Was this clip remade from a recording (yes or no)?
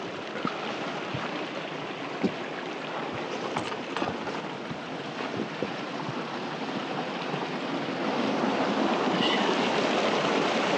no